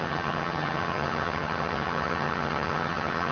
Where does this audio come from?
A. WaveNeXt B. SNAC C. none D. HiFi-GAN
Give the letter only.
D